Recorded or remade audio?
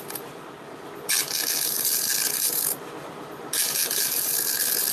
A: recorded